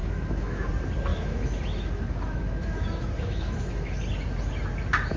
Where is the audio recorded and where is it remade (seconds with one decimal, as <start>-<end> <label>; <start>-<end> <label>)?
0.0-0.7 remade; 0.7-1.1 recorded; 1.1-4.0 remade; 4.0-5.2 recorded